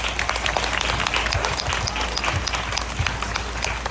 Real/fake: real